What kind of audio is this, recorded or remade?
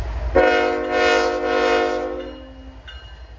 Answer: recorded